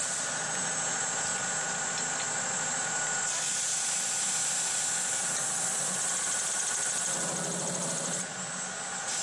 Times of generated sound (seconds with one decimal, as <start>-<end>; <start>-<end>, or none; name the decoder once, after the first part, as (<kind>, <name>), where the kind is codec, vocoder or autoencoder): none